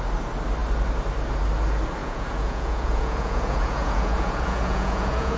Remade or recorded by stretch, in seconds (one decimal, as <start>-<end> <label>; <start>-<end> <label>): 0.0-2.0 recorded; 2.0-5.4 remade